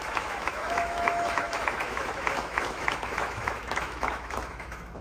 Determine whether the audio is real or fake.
fake